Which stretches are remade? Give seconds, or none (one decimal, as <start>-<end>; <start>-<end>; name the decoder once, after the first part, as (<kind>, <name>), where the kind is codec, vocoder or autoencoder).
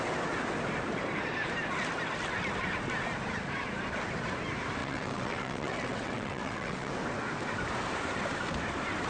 4.8-6.9 (vocoder, WaveNeXt)